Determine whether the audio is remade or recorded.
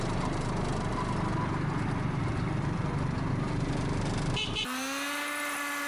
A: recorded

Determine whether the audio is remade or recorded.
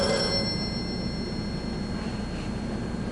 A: recorded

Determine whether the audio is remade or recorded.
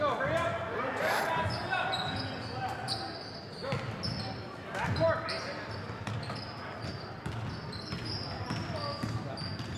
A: recorded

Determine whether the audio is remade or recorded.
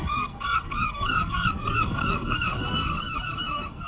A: remade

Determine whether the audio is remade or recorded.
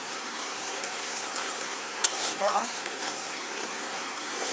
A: remade